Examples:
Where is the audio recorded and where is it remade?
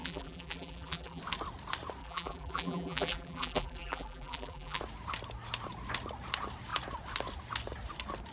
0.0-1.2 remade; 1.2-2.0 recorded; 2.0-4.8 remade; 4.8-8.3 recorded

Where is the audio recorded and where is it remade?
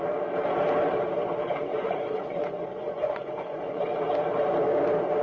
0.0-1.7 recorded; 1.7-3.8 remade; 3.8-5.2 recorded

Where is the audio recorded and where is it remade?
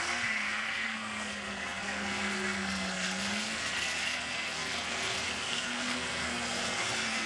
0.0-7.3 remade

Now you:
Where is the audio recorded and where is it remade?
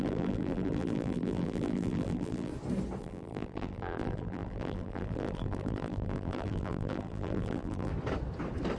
0.0-2.5 remade; 2.5-3.0 recorded; 3.0-7.9 remade; 7.9-8.8 recorded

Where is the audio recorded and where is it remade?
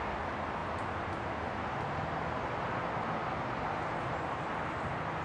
0.0-5.2 recorded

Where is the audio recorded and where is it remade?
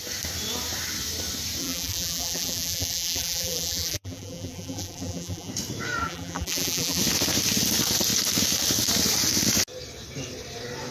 0.0-1.6 recorded; 1.6-5.5 remade; 5.5-6.0 recorded; 6.0-7.0 remade; 7.0-10.9 recorded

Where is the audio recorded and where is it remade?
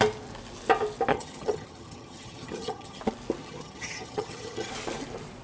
0.0-1.1 recorded; 1.1-3.0 remade; 3.0-3.4 recorded; 3.4-4.7 remade; 4.7-5.4 recorded